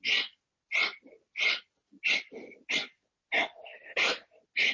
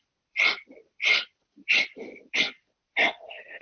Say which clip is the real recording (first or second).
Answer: first